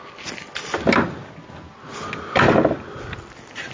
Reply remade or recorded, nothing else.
recorded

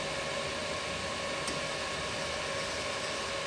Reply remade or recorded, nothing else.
recorded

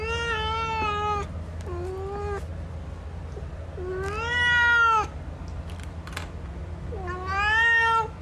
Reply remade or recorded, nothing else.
recorded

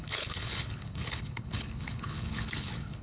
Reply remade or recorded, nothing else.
remade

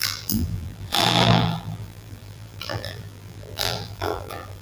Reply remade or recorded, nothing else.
remade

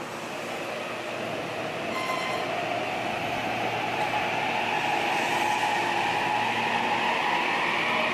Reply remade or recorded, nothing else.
recorded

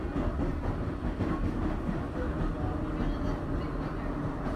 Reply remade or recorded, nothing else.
recorded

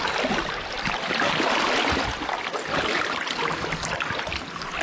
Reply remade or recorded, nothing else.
recorded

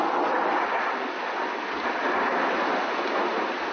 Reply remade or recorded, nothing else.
recorded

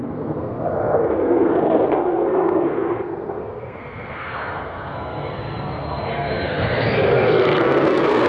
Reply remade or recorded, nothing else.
remade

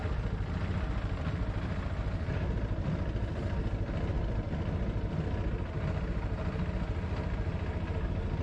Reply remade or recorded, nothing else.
recorded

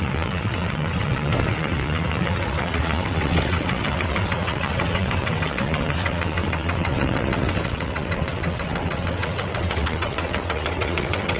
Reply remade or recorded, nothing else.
remade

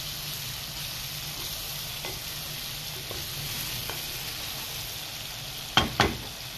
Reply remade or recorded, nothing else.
recorded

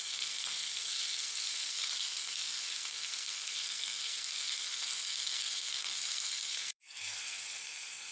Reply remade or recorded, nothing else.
remade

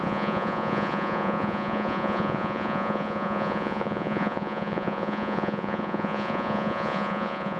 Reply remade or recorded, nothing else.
remade